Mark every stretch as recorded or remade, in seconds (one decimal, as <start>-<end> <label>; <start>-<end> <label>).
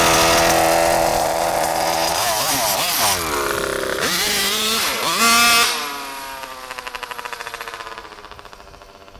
0.0-1.1 recorded; 1.1-3.0 remade; 3.0-3.9 recorded; 3.9-5.2 remade; 5.2-9.2 recorded